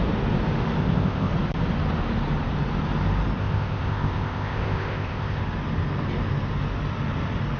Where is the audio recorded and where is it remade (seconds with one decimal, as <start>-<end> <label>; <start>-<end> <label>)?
0.0-0.8 recorded; 0.8-1.3 remade; 1.3-3.4 recorded; 3.4-5.4 remade; 5.4-7.6 recorded